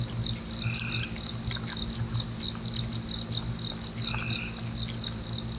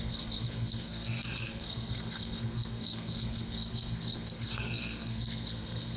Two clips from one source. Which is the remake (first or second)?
second